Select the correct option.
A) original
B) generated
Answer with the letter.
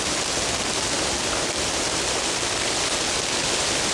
A